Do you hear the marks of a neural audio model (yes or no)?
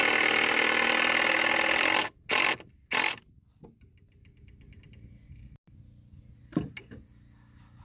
no